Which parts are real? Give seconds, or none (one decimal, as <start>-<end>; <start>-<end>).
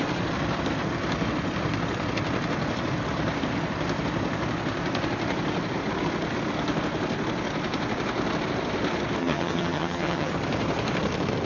0.0-9.2; 10.3-11.5